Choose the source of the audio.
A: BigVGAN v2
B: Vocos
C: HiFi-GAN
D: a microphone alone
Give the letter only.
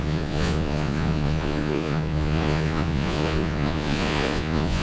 B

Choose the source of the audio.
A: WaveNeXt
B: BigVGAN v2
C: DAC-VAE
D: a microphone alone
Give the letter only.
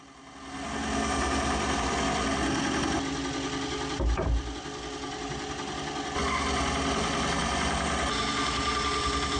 D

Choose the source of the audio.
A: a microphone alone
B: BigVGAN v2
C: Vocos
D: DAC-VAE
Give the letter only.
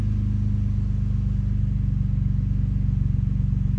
A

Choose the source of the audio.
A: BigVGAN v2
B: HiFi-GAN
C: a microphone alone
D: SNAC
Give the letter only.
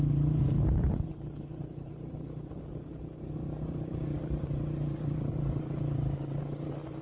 A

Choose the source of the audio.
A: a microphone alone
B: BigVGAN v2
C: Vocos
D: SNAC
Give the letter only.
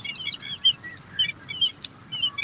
A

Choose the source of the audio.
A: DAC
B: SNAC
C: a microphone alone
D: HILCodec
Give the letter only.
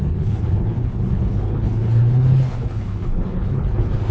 D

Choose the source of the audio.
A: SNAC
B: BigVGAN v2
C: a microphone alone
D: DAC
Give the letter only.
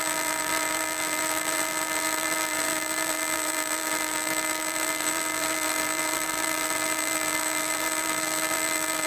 B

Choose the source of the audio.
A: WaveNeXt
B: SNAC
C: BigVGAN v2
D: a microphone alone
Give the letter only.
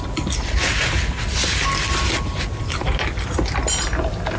D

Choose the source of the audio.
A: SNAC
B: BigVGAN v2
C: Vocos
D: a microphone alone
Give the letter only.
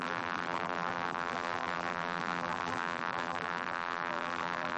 B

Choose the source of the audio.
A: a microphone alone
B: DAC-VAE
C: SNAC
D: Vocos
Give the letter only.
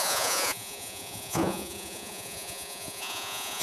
D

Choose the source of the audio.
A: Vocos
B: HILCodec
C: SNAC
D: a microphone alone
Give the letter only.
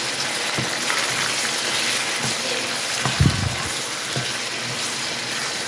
D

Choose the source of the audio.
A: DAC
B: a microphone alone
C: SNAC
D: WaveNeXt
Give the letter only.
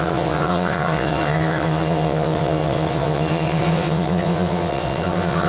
D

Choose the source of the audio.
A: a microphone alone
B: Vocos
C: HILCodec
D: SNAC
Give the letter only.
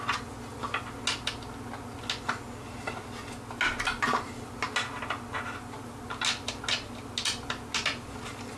A